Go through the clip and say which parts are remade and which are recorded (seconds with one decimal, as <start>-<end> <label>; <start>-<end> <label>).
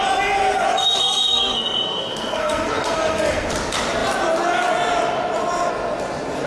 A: 0.0-0.7 recorded; 0.7-3.5 remade; 3.5-6.5 recorded